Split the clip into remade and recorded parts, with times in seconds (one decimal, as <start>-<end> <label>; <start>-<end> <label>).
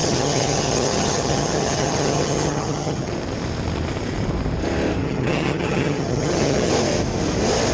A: 0.0-3.1 remade; 3.1-5.0 recorded; 5.0-6.7 remade; 6.7-7.7 recorded